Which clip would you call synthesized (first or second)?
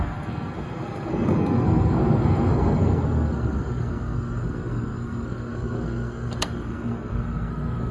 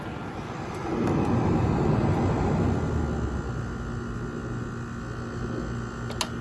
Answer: first